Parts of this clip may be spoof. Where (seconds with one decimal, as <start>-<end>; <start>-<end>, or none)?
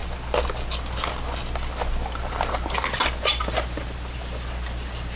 none